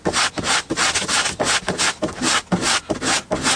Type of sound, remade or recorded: recorded